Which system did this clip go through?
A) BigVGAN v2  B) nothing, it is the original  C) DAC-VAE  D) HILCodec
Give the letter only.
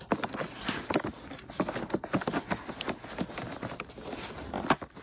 B